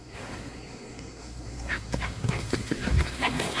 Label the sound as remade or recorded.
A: remade